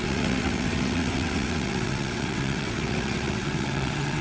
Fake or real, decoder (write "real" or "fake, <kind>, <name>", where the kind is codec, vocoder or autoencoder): fake, vocoder, WaveNeXt